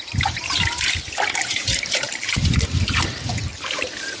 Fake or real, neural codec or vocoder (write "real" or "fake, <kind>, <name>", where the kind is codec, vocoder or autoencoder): fake, vocoder, BigVGAN v2